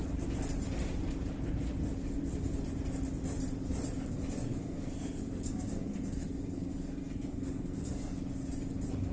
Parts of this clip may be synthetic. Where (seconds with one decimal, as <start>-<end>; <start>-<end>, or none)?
4.5-8.1